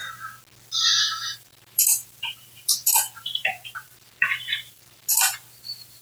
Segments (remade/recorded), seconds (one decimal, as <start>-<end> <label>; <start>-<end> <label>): 0.0-1.0 recorded; 1.0-6.0 remade